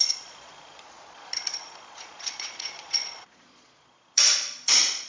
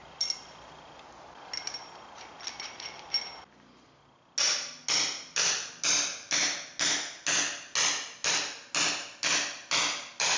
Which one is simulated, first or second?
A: first